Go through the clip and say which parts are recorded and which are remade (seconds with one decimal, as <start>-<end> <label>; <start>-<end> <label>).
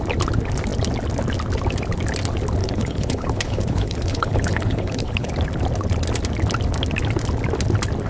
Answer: 0.0-2.6 recorded; 2.6-5.3 remade; 5.3-8.1 recorded